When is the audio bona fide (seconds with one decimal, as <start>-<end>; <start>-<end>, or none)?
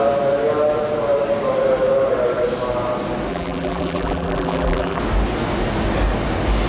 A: 0.0-3.3; 5.0-6.7